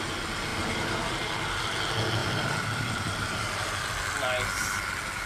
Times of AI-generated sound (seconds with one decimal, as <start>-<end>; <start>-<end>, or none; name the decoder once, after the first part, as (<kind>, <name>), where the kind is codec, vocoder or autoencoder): 2.2-3.9 (vocoder, BigVGAN v2)